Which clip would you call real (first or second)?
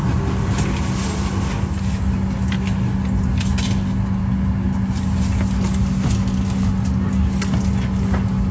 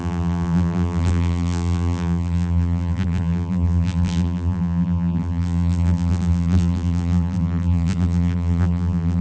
first